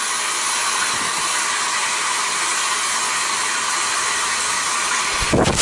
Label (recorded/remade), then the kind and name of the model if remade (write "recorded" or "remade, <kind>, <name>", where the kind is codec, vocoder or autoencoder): recorded